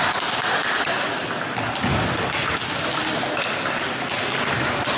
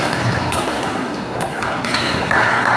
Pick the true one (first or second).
first